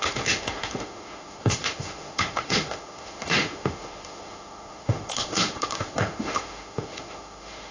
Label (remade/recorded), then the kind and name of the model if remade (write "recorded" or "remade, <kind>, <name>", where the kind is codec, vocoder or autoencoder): remade, autoencoder, DAC-VAE